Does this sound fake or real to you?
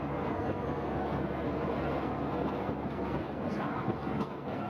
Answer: fake